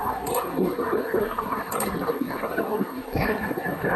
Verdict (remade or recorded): remade